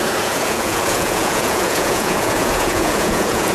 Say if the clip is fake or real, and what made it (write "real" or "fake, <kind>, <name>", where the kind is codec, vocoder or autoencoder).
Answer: fake, vocoder, Vocos